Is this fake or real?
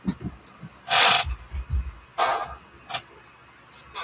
real